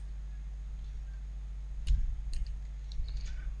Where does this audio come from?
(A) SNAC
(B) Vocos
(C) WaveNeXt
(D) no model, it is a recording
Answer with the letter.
D